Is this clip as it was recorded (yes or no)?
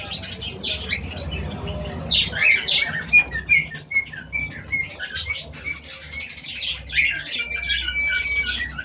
yes